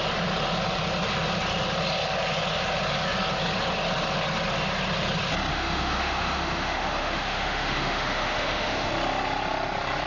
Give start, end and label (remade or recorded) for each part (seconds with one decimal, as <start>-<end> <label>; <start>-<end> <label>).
0.0-5.5 recorded; 5.5-8.9 remade; 8.9-10.1 recorded